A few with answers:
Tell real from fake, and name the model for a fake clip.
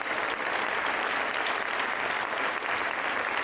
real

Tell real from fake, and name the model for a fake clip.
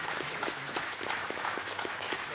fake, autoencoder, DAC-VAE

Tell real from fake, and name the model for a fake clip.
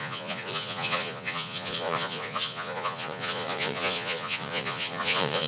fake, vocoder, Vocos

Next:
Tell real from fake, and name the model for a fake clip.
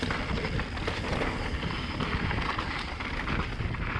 real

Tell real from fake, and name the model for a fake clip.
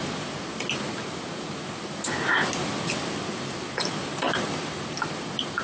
real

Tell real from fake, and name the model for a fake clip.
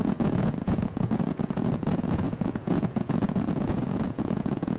fake, vocoder, Vocos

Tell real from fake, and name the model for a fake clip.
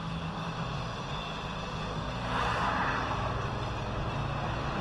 real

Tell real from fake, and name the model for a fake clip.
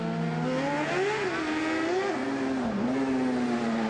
real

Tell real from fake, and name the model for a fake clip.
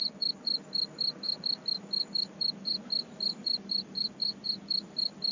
real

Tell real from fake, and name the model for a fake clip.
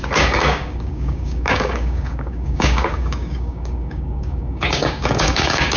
fake, codec, DAC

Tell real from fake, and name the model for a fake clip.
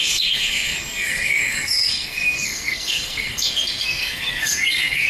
fake, codec, SNAC